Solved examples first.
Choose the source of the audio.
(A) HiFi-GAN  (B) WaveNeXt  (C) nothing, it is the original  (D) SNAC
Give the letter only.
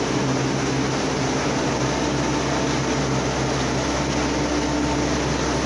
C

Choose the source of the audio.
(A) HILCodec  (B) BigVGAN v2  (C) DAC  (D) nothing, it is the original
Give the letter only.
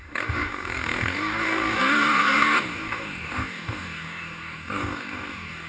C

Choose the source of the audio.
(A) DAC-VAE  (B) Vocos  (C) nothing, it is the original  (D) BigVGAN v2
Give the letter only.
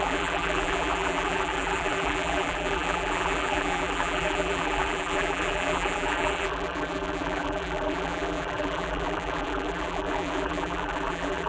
D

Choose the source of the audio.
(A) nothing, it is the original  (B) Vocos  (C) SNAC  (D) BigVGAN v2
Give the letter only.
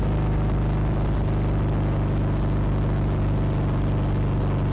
A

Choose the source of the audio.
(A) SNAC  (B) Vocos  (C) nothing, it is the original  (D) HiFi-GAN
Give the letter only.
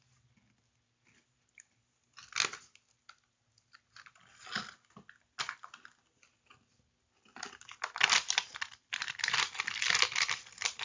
C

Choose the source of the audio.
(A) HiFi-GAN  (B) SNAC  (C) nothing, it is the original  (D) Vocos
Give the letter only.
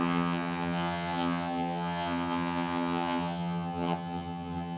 A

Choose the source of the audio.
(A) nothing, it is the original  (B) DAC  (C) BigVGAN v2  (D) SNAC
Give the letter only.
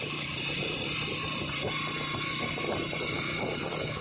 C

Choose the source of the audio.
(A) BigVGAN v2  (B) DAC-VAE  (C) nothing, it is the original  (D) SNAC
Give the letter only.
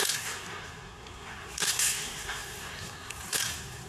D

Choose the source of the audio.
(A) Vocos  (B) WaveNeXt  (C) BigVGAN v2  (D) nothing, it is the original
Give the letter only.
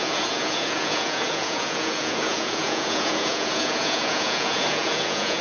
A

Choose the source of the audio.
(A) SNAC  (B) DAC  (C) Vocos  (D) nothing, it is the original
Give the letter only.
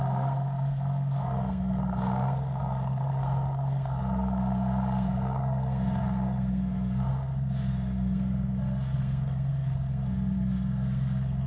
A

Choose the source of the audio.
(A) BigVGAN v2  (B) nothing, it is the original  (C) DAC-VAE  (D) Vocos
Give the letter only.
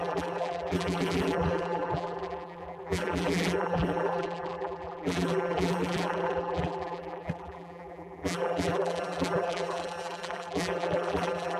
A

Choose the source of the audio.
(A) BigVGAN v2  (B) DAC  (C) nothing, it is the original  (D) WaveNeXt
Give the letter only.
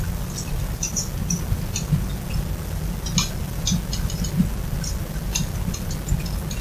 C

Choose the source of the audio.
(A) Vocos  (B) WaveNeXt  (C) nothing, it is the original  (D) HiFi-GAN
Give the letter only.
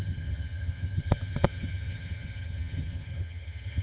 D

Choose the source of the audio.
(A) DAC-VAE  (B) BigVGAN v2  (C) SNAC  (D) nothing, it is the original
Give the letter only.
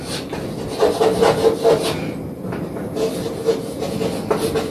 D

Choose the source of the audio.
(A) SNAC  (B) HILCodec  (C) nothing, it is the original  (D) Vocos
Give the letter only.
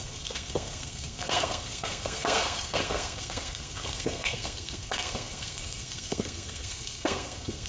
A